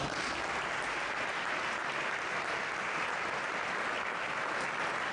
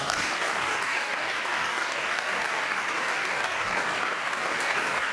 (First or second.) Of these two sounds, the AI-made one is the second